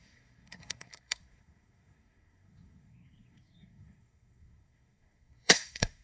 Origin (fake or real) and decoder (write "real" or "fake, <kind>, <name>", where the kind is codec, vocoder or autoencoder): fake, codec, SNAC